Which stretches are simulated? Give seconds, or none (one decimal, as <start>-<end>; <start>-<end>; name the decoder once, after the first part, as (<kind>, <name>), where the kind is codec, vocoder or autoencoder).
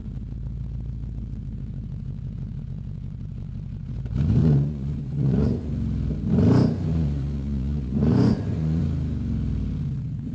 4.4-5.7 (vocoder, Vocos); 6.9-8.8